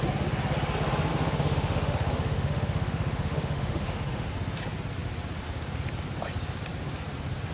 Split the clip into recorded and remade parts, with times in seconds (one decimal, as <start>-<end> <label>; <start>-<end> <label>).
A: 0.0-1.1 recorded; 1.1-4.3 remade; 4.3-7.5 recorded